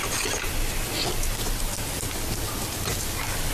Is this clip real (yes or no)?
yes